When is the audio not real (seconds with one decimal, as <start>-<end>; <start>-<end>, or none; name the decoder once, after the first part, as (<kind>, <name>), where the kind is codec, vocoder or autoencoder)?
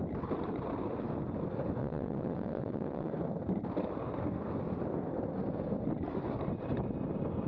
1.8-3.1 (vocoder, WaveNeXt)